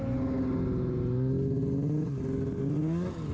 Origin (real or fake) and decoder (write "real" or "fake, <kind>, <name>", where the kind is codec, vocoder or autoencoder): real